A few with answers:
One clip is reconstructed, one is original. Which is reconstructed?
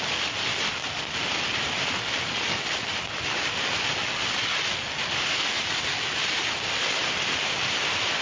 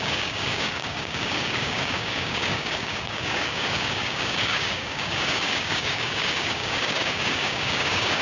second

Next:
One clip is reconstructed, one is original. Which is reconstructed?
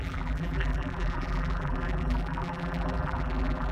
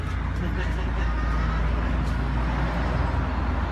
first